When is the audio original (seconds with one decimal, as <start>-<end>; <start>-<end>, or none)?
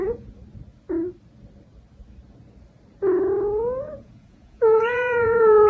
0.4-3.8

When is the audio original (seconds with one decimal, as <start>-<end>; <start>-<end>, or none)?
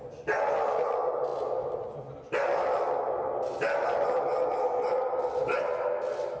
0.0-1.3; 3.1-6.4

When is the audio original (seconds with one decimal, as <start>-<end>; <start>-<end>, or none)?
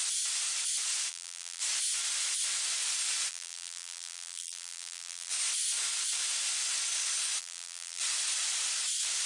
0.0-1.1; 1.6-3.3; 5.3-7.4; 8.0-9.3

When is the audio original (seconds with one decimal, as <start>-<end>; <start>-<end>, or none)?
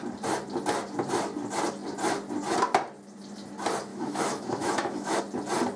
0.0-3.9; 5.2-5.8